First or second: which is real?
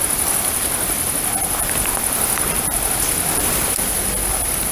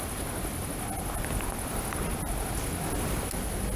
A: second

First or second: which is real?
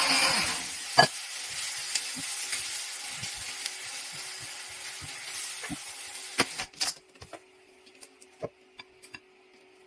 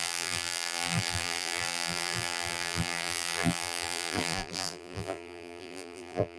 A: first